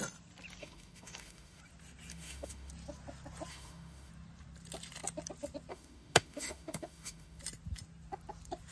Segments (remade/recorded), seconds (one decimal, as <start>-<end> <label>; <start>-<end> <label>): 0.0-0.6 recorded; 0.6-1.6 remade; 1.6-2.1 recorded; 2.1-2.7 remade; 2.7-3.5 recorded; 3.5-4.1 remade; 4.1-5.7 recorded; 5.7-7.4 remade; 7.4-8.7 recorded